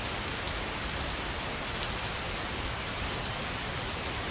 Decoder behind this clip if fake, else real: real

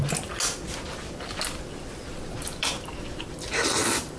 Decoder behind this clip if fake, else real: real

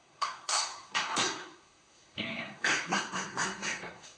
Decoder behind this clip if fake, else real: fake, codec, SNAC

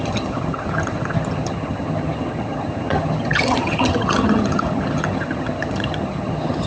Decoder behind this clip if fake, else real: fake, vocoder, HiFi-GAN